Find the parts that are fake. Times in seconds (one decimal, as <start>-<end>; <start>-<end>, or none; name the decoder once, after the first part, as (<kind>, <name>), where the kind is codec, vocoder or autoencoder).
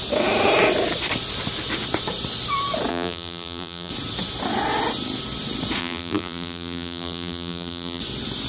2.9-3.9 (vocoder, BigVGAN v2); 5.8-8.0